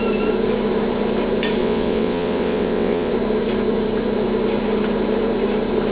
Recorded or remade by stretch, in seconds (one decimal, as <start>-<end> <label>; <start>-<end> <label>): 0.0-1.6 recorded; 1.6-3.1 remade; 3.1-5.9 recorded